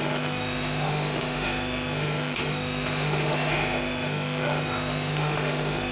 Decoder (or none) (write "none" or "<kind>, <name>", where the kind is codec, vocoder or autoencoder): autoencoder, DAC-VAE